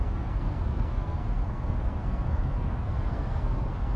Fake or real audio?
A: fake